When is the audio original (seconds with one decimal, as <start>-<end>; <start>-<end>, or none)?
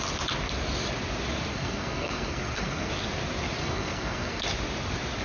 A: 0.0-1.5; 2.9-3.6; 4.4-5.2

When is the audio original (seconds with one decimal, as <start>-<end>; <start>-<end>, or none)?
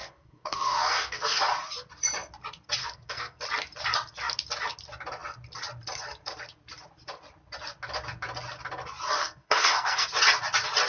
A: 1.4-2.8; 3.4-9.2; 10.1-10.9